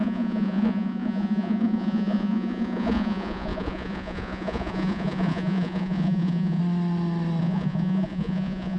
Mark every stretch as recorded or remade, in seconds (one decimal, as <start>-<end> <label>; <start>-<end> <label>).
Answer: 0.0-6.6 remade; 6.6-7.4 recorded; 7.4-8.8 remade